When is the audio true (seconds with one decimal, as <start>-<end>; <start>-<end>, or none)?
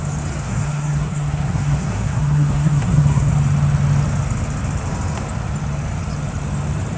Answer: 0.0-0.4; 3.3-7.0